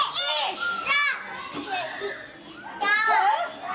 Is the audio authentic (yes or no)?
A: yes